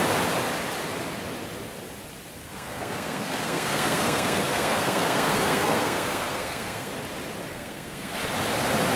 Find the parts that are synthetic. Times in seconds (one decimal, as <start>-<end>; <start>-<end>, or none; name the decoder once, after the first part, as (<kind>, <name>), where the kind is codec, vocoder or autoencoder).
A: 2.4-6.9 (codec, SNAC); 7.5-8.1